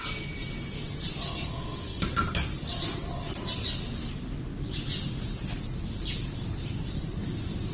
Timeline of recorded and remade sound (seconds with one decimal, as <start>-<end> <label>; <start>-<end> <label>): 0.0-1.3 recorded; 1.3-2.0 remade; 2.0-7.7 recorded